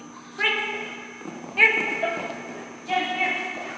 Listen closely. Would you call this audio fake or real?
real